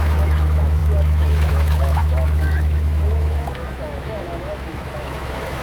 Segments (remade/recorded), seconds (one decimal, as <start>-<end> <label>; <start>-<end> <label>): 0.0-5.6 remade